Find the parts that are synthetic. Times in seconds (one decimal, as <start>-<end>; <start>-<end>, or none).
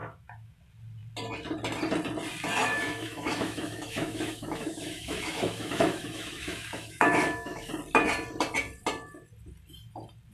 0.0-0.6; 2.6-7.7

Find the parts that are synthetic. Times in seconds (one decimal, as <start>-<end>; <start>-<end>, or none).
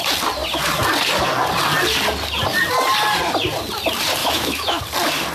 4.2-4.8